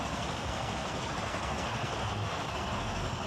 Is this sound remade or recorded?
remade